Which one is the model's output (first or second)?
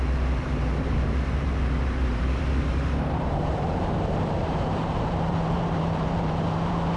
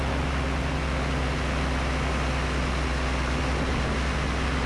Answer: first